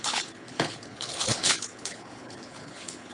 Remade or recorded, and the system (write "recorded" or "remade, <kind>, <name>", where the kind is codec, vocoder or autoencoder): remade, codec, HILCodec